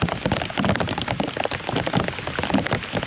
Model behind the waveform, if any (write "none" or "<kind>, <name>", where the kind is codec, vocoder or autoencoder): none